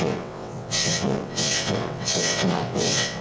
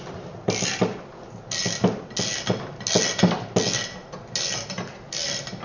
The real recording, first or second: second